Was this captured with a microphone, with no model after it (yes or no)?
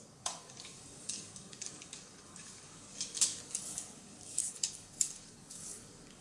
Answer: no